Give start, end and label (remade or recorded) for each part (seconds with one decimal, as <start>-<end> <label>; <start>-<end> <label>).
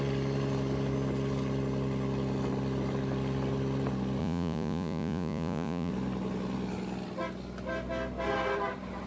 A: 0.0-4.2 recorded; 4.2-5.9 remade; 5.9-9.1 recorded